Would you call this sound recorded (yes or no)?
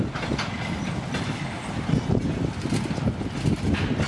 yes